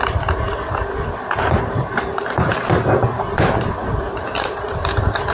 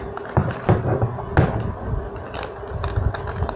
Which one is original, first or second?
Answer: second